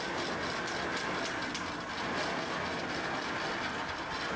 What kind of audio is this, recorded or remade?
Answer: recorded